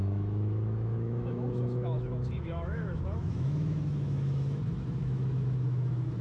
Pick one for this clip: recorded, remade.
remade